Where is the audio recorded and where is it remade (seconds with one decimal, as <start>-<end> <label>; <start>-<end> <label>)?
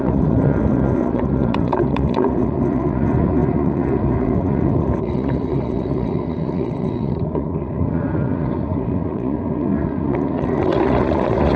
0.0-11.6 remade